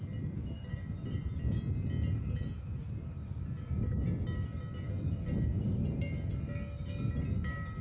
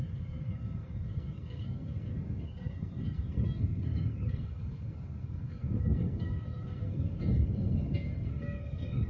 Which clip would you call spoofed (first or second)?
second